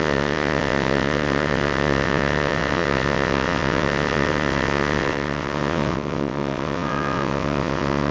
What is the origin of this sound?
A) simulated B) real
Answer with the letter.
A